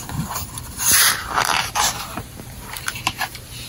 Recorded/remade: remade